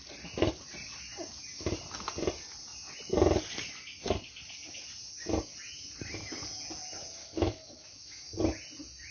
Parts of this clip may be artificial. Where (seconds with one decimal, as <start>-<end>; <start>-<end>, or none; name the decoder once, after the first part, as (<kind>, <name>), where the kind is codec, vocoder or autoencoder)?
7.2-8.4 (autoencoder, DAC-VAE)